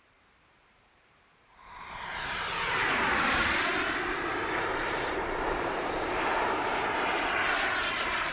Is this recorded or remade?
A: remade